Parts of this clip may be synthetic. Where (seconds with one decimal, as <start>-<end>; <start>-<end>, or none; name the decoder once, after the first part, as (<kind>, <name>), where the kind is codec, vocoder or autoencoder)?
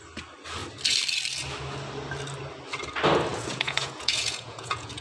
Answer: 3.3-5.0 (vocoder, Vocos)